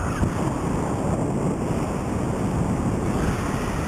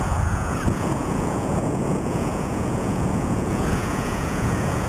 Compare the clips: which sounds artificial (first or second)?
second